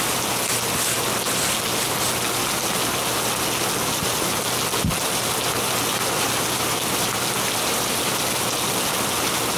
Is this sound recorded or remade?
recorded